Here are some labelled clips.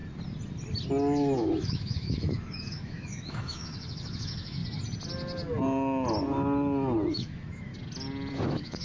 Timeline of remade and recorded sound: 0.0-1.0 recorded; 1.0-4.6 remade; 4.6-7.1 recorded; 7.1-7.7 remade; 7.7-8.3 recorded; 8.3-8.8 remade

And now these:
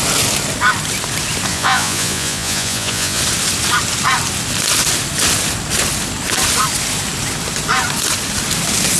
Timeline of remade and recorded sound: 0.0-1.5 recorded; 1.5-3.2 remade; 3.2-9.0 recorded

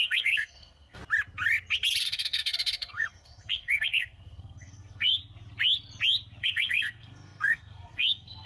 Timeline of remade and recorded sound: 0.0-1.0 remade; 1.0-2.0 recorded; 2.0-5.2 remade; 5.2-6.4 recorded; 6.4-8.5 remade

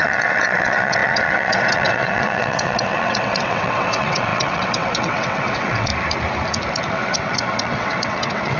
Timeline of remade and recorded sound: 0.0-5.9 remade; 5.9-6.9 recorded; 6.9-8.6 remade

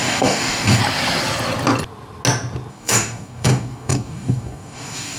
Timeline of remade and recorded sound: 0.0-0.8 remade; 0.8-2.7 recorded; 2.7-5.2 remade

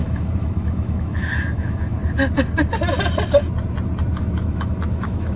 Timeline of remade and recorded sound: 0.0-2.0 remade; 2.0-4.1 recorded; 4.1-5.4 remade